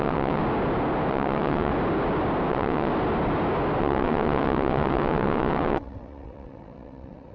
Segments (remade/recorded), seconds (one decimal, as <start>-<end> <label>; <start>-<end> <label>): 0.0-0.4 remade; 0.4-1.1 recorded; 1.1-1.7 remade; 1.7-2.5 recorded; 2.5-2.9 remade; 2.9-3.8 recorded; 3.8-7.3 remade